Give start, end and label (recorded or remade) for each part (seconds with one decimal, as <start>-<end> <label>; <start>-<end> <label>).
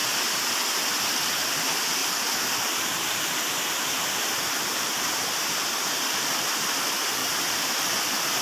0.0-2.0 recorded; 2.0-6.8 remade; 6.8-8.4 recorded